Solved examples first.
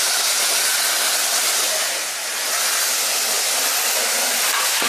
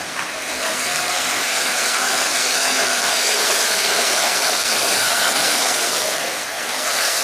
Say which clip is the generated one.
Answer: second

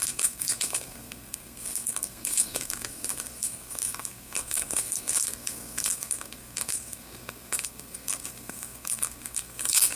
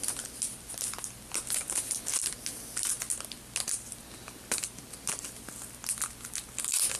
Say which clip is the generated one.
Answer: first